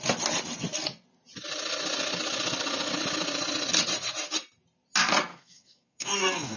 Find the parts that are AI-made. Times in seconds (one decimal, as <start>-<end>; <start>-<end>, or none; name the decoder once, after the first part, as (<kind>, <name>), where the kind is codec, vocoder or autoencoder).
5.3-6.6 (codec, SNAC)